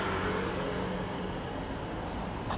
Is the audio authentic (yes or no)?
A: yes